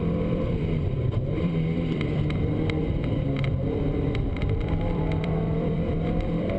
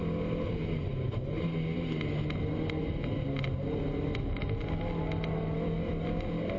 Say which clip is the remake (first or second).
first